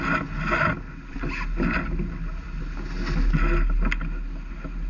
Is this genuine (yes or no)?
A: yes